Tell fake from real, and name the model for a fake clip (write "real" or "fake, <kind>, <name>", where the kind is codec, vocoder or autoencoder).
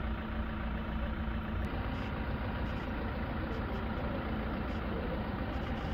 real